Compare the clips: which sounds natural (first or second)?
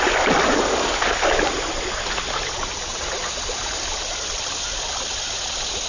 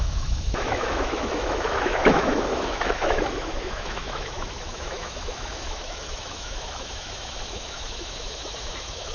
first